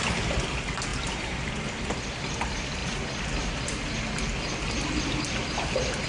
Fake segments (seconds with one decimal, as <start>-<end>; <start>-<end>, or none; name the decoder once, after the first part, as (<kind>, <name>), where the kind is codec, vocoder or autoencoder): none